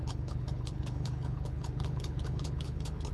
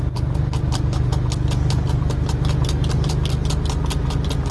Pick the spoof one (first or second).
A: first